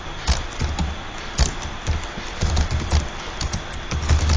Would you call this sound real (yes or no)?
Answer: yes